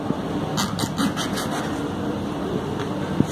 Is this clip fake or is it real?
real